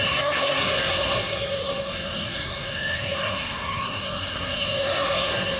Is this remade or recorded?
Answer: remade